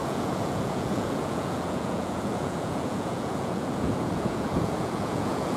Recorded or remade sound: remade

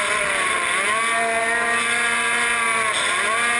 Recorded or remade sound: recorded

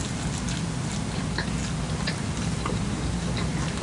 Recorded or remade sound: recorded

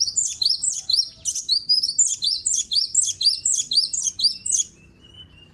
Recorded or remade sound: recorded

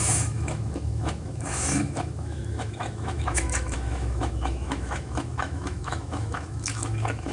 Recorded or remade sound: remade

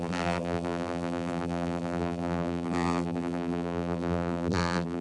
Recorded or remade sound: remade